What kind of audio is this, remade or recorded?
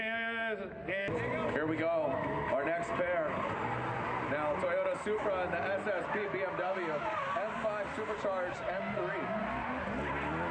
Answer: recorded